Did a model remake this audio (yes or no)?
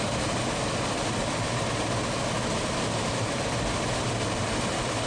no